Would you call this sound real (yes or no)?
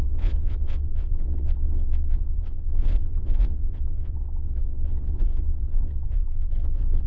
no